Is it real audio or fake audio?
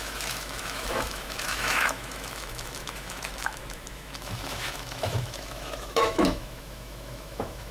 fake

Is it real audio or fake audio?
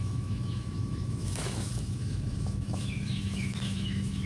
fake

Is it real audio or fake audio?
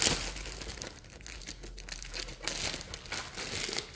real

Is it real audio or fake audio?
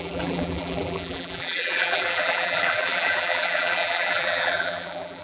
fake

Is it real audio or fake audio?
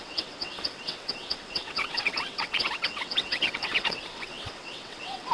fake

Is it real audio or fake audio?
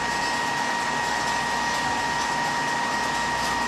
real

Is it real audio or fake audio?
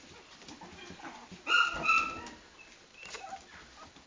real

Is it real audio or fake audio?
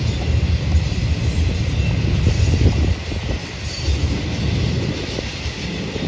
real